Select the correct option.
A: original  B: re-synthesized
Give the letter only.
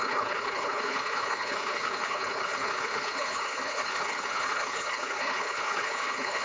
B